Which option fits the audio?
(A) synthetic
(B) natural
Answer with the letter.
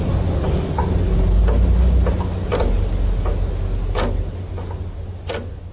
B